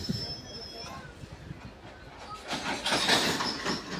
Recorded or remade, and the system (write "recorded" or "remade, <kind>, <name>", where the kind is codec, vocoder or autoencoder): recorded